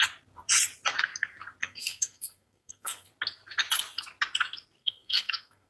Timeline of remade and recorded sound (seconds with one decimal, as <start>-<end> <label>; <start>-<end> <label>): 0.0-1.6 recorded; 1.6-3.1 remade; 3.1-4.8 recorded; 4.8-5.7 remade